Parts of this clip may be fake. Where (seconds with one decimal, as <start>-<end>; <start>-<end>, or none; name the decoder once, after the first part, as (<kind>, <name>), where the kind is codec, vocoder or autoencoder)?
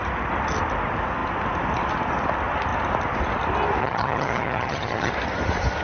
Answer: 3.8-5.1 (vocoder, HiFi-GAN)